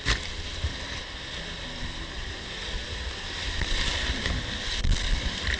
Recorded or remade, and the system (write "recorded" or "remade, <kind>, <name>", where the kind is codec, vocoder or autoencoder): recorded